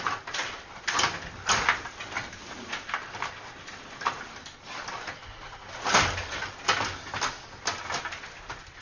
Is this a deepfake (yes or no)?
no